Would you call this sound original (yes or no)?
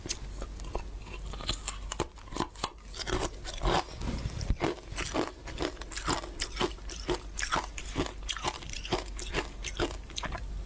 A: yes